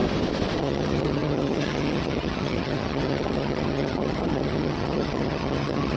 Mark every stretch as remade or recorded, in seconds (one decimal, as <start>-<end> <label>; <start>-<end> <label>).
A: 0.0-0.6 recorded; 0.6-6.0 remade